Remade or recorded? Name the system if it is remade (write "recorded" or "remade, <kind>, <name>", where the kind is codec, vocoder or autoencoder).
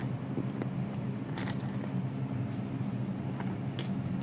recorded